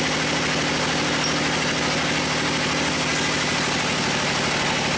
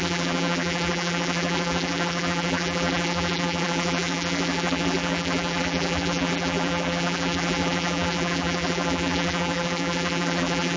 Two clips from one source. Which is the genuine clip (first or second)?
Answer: first